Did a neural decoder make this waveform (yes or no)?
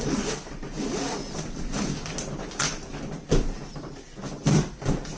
no